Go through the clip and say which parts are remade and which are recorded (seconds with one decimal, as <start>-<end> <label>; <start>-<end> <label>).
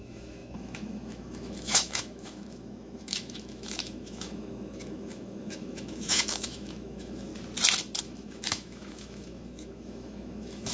0.0-7.3 remade; 7.3-8.0 recorded; 8.0-10.7 remade